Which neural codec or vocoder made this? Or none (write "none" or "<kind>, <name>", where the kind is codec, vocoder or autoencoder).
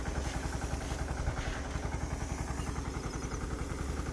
none